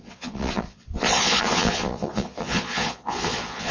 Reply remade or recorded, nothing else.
remade